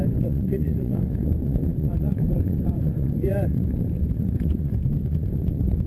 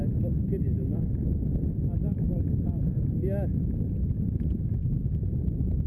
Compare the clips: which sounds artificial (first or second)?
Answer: first